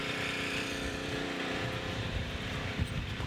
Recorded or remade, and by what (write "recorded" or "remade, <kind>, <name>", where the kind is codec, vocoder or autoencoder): remade, vocoder, BigVGAN v2